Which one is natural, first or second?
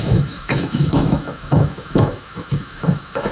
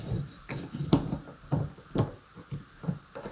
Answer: second